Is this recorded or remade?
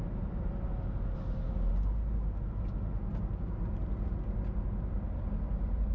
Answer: recorded